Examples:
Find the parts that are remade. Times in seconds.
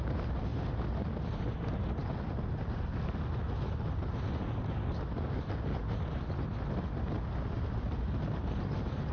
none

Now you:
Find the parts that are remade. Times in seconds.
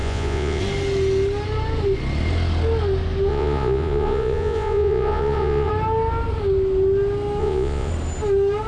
0.0-0.6 (vocoder, Vocos); 3.3-5.7; 7.4-7.9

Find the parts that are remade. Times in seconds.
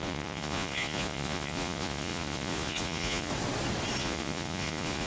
0.0-3.3 (vocoder, Vocos); 4.0-5.1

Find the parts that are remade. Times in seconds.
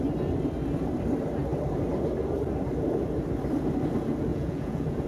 4.3-5.1 (vocoder, Vocos)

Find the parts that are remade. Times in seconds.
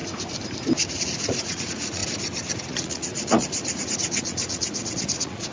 0.9-2.0 (vocoder, Vocos); 2.6-5.5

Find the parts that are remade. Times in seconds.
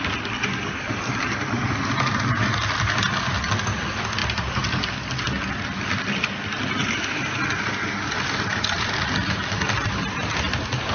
none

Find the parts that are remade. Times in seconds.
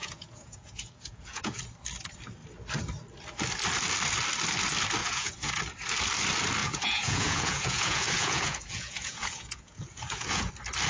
0.0-1.6 (vocoder, Vocos); 5.0-5.5; 6.6-10.5